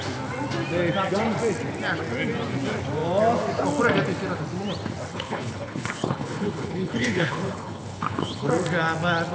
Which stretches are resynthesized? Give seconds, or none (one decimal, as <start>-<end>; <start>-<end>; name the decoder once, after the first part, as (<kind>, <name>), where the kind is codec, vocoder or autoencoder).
5.1-8.5 (codec, HILCodec)